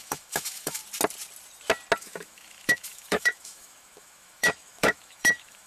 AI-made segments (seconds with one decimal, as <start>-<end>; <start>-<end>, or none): 0.0-0.8; 2.0-5.7